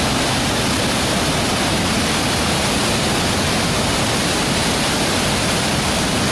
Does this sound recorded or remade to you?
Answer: recorded